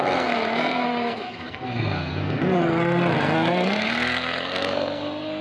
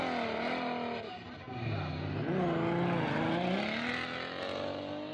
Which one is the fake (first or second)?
first